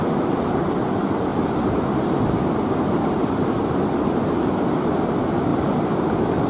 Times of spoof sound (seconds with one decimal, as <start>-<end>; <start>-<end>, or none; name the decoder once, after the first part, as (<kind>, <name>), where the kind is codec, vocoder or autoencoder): 1.3-5.1 (vocoder, BigVGAN v2); 5.5-6.0